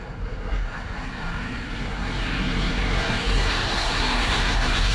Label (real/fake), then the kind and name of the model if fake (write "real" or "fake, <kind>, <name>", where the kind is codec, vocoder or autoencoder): fake, codec, SNAC